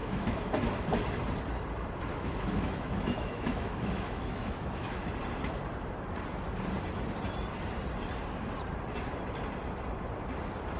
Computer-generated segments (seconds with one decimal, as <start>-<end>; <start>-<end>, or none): 0.0-0.5; 2.1-5.1